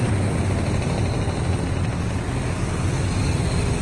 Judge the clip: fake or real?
real